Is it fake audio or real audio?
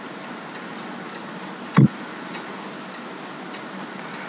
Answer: real